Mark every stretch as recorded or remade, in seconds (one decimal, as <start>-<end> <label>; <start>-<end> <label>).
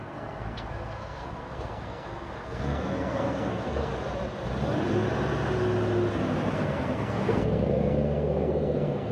0.0-3.9 remade; 3.9-6.5 recorded; 6.5-9.1 remade